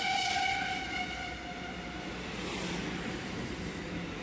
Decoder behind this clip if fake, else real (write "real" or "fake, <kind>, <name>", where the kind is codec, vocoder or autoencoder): real